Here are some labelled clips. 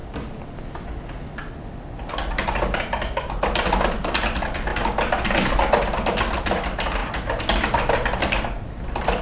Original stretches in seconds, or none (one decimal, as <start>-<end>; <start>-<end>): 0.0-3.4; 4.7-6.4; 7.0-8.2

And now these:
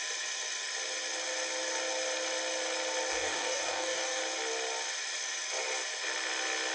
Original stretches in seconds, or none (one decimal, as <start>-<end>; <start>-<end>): 0.0-3.1; 4.2-6.7

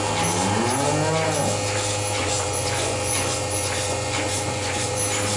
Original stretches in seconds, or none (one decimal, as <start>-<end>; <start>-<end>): 0.0-2.2; 5.0-5.4

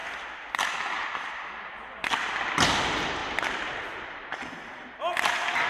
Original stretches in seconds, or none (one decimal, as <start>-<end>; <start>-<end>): 0.0-5.7

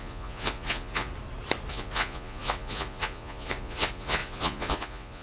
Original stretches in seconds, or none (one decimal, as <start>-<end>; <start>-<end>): 1.1-1.7

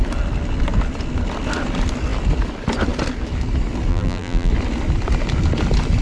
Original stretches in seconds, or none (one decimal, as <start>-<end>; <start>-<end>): 0.0-3.9; 4.5-6.0

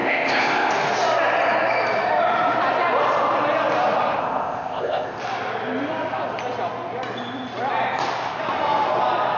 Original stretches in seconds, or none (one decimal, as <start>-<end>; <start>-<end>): 0.7-4.2; 5.2-9.4